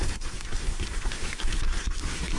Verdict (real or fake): fake